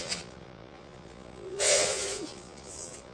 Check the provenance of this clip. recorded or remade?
remade